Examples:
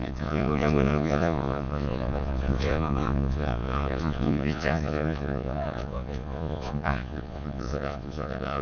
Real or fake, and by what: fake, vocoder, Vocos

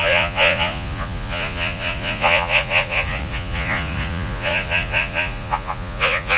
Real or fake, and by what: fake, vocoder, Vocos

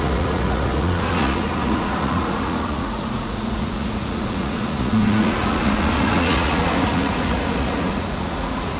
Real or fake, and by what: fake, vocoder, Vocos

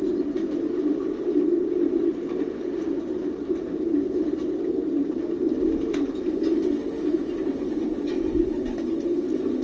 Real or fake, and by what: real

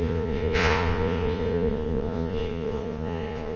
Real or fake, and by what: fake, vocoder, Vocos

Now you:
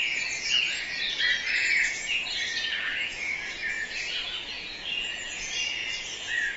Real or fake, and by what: fake, vocoder, Vocos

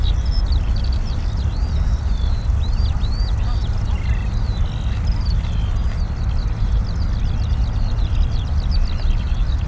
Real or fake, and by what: real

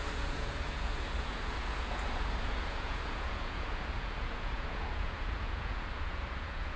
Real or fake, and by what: fake, vocoder, Vocos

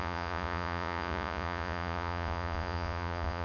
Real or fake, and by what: fake, vocoder, Vocos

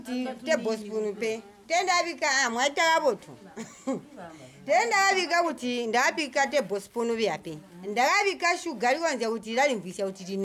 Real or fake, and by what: real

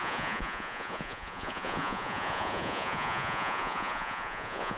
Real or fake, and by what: fake, vocoder, Vocos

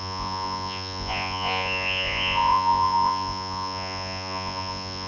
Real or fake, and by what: fake, vocoder, Vocos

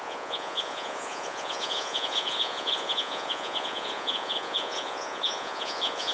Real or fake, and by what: fake, vocoder, Vocos